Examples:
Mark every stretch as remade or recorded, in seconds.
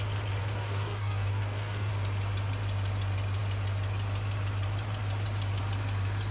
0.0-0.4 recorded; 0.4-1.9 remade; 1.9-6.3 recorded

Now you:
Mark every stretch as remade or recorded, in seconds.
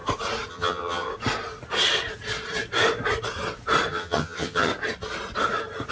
0.0-0.5 recorded; 0.5-1.1 remade; 1.1-3.9 recorded; 3.9-4.7 remade; 4.7-5.9 recorded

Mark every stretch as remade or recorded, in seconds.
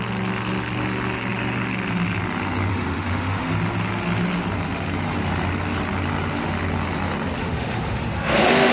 0.0-2.7 recorded; 2.7-3.5 remade; 3.5-7.4 recorded; 7.4-8.7 remade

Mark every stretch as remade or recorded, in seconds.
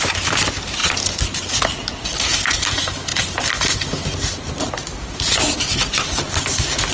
0.0-6.9 recorded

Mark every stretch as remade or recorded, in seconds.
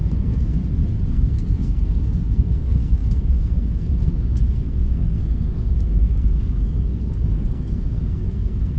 0.0-0.6 remade; 0.6-1.1 recorded; 1.1-8.8 remade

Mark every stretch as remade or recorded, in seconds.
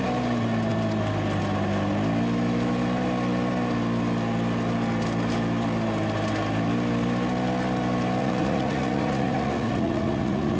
0.0-8.2 recorded; 8.2-10.6 remade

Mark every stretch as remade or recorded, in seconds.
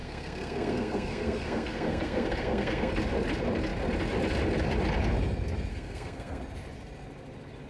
0.0-2.9 remade; 2.9-5.7 recorded; 5.7-6.4 remade; 6.4-7.7 recorded